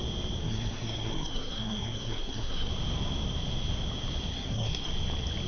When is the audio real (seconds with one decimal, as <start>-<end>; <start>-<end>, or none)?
0.0-0.4; 2.7-4.3; 4.9-5.5